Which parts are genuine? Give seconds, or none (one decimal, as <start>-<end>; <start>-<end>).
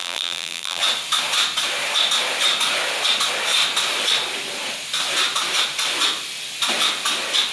0.8-7.5